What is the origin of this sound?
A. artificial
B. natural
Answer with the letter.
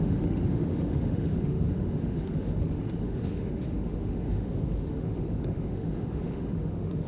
A